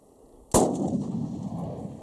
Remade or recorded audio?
recorded